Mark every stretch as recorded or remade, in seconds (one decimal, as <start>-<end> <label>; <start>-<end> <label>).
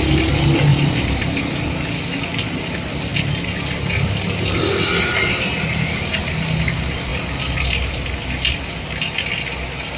0.0-0.7 recorded; 0.7-1.4 remade; 1.4-7.1 recorded; 7.1-8.6 remade; 8.6-10.0 recorded